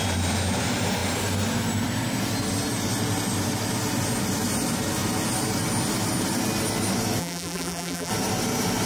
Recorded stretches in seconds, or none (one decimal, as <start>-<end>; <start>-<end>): 0.0-7.2; 8.1-8.9